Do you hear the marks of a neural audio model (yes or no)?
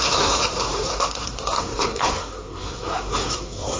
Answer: yes